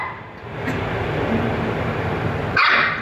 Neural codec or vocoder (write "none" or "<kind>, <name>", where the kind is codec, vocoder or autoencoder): vocoder, BigVGAN v2